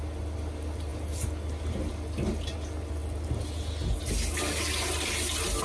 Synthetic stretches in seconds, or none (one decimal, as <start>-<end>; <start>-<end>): none